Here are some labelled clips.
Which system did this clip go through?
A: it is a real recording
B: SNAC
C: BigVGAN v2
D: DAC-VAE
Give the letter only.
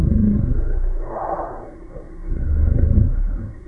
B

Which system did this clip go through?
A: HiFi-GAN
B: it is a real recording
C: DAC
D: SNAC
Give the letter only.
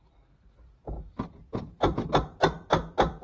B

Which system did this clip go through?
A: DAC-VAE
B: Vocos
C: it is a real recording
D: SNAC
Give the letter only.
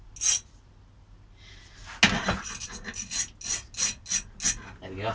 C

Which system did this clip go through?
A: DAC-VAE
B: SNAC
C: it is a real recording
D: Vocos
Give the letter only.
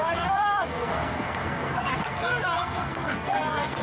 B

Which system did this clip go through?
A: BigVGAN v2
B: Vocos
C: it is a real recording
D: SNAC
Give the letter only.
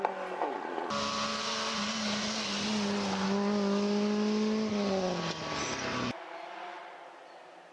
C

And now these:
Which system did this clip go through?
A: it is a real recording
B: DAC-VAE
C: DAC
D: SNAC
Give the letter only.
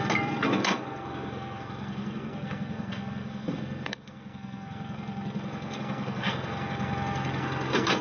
D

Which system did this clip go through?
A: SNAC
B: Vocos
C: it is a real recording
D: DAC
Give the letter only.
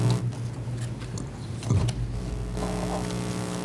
C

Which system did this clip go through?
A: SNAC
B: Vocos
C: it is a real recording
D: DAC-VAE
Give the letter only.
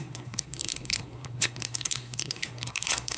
A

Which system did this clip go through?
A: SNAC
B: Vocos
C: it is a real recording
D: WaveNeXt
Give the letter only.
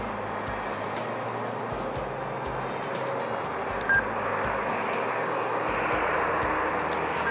C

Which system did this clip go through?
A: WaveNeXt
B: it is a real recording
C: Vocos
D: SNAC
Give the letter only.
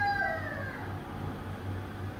B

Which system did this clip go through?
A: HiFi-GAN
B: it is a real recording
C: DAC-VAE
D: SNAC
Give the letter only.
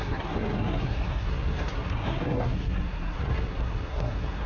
D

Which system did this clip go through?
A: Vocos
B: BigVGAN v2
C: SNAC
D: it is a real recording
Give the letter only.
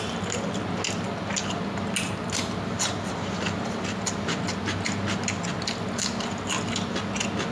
D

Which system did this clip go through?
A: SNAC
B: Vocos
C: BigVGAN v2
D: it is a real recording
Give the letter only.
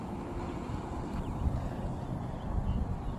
D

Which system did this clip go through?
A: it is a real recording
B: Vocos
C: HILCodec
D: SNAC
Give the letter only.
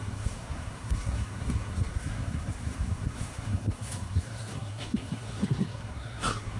D